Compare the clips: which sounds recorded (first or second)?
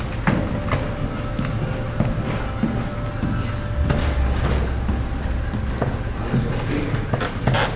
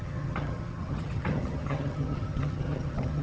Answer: first